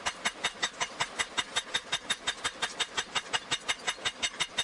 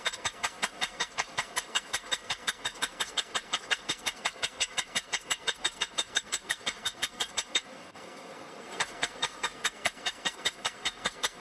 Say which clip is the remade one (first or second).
second